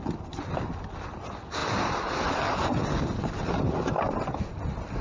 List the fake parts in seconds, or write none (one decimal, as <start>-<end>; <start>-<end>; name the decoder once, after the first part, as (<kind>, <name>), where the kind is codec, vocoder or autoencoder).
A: none